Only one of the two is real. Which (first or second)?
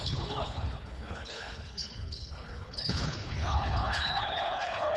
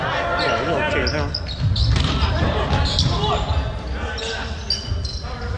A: second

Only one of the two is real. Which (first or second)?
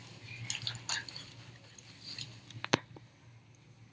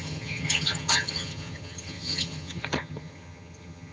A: first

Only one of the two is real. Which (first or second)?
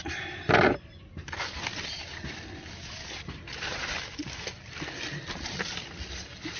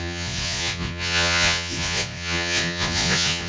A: first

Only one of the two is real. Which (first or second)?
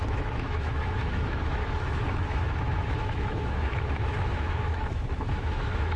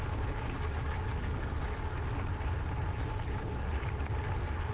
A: second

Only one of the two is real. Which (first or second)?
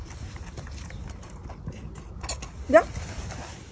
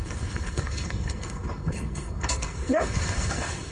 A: first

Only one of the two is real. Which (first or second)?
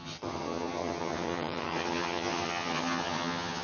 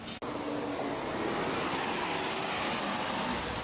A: second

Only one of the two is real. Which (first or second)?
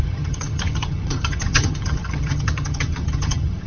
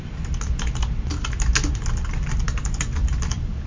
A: second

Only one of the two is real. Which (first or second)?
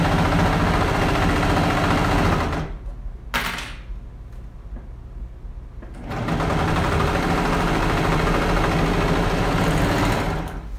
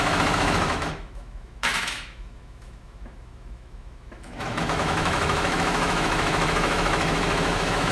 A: first